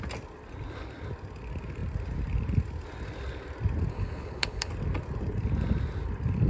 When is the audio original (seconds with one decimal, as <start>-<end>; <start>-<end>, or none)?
0.0-3.9; 4.7-6.5